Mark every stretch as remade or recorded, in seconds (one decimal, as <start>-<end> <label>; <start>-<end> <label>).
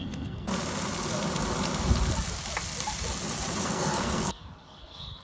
0.0-0.5 remade; 0.5-3.6 recorded; 3.6-5.2 remade